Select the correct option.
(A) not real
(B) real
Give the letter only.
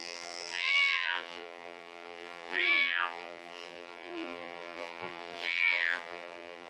A